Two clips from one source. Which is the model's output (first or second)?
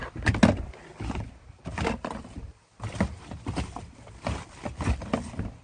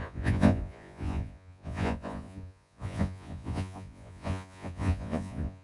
second